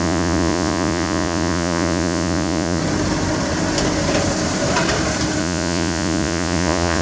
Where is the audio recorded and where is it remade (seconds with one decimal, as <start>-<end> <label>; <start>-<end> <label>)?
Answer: 0.0-2.8 remade; 2.8-5.4 recorded; 5.4-7.0 remade